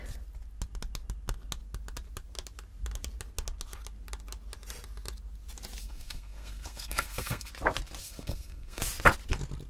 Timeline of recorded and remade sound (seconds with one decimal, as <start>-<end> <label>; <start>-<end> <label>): 0.0-5.8 recorded; 5.8-7.5 remade; 7.5-8.0 recorded; 8.0-8.8 remade; 8.8-9.7 recorded